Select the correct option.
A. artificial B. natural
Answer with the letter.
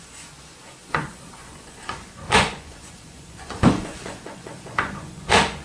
A